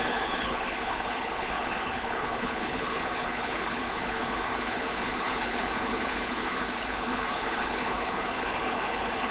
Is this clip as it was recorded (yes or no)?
no